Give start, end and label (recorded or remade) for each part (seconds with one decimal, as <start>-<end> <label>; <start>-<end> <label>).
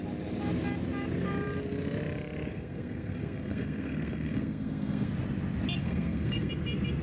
0.0-2.5 recorded; 2.5-5.1 remade; 5.1-5.8 recorded; 5.8-6.5 remade; 6.5-7.0 recorded